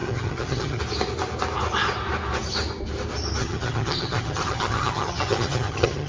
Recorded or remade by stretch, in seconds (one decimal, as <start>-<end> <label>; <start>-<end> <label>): 0.0-0.8 remade; 0.8-3.4 recorded; 3.4-6.1 remade